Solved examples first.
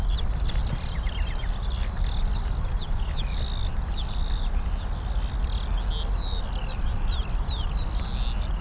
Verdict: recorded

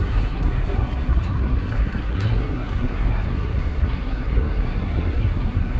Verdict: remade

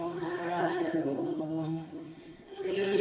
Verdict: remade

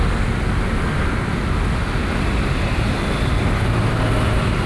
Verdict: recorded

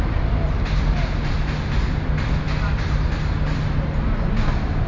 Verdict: recorded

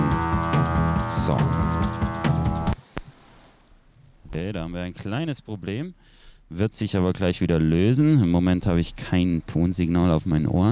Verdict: recorded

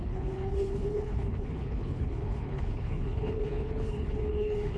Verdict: remade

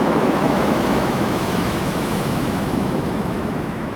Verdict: remade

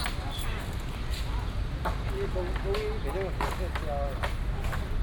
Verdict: recorded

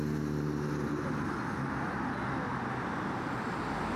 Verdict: recorded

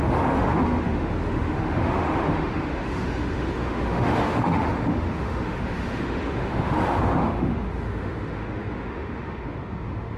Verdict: remade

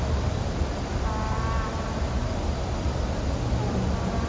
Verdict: recorded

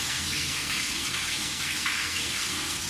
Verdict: remade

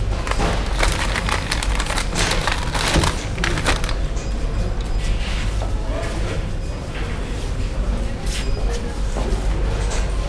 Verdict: recorded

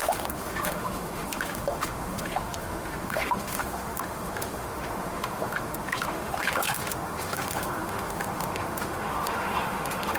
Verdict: remade